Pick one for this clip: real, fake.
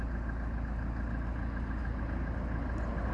real